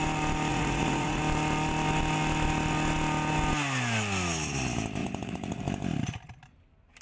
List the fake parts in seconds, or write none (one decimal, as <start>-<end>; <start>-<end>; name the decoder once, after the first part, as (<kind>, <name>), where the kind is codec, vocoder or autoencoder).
0.5-1.2 (vocoder, Vocos); 5.0-5.6